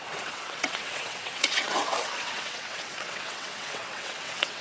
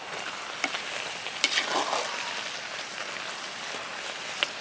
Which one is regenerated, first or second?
first